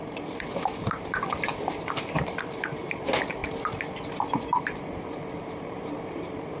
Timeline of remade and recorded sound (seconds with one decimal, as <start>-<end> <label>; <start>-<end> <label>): 0.0-3.4 remade; 3.4-4.6 recorded; 4.6-6.6 remade